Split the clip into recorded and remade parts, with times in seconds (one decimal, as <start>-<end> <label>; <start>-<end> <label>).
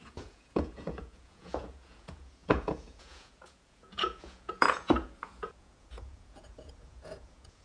0.0-7.6 remade